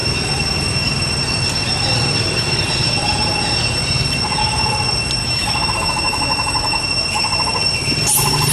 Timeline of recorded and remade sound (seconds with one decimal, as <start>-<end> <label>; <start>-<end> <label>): 0.0-5.2 recorded; 5.2-6.8 remade; 6.8-8.5 recorded